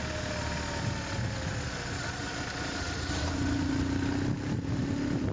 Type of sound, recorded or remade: recorded